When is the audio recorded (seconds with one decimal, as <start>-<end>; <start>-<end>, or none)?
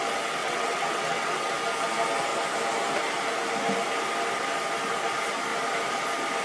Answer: 0.0-0.4; 1.5-6.4